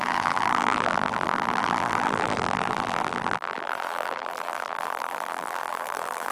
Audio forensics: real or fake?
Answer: fake